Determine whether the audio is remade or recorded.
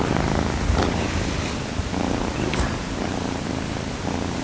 recorded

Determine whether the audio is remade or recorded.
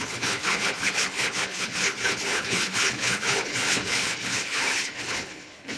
remade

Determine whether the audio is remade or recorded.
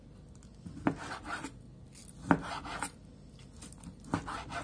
recorded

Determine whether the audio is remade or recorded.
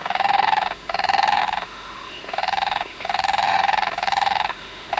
remade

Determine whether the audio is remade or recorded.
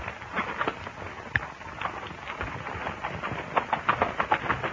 recorded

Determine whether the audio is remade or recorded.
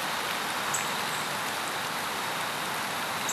recorded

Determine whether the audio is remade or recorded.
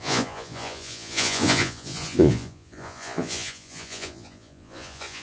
remade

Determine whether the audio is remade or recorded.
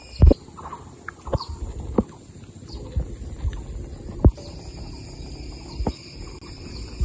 recorded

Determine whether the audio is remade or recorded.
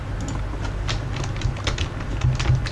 recorded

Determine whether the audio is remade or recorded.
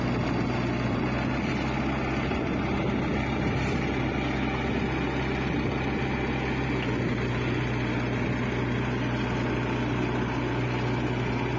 recorded